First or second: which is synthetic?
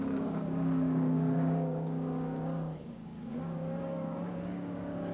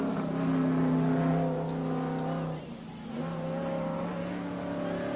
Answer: first